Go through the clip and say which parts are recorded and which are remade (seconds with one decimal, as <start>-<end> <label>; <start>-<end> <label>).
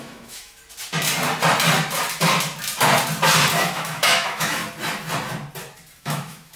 0.0-0.6 remade; 0.6-3.6 recorded; 3.6-4.6 remade; 4.6-6.0 recorded; 6.0-6.6 remade